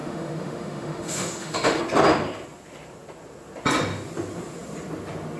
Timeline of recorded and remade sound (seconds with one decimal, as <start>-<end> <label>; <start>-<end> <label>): 0.0-1.8 remade; 1.8-5.4 recorded

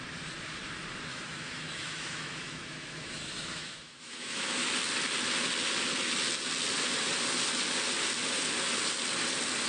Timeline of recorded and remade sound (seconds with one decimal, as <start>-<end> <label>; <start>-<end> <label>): 0.0-1.1 recorded; 1.1-4.7 remade; 4.7-9.7 recorded